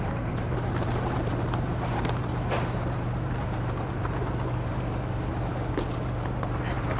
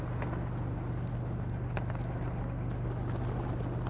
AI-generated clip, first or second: first